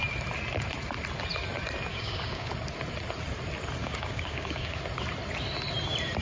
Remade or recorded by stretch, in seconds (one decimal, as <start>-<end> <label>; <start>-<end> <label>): 0.0-1.9 recorded; 1.9-2.5 remade; 2.5-3.8 recorded; 3.8-4.8 remade; 4.8-6.2 recorded